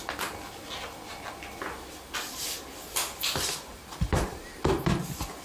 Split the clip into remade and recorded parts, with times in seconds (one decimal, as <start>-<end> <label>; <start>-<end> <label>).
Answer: 0.0-3.7 recorded; 3.7-4.3 remade; 4.3-5.4 recorded